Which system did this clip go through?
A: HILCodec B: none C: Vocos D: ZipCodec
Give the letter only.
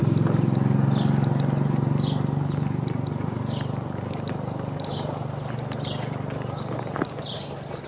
B